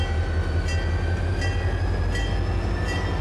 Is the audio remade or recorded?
recorded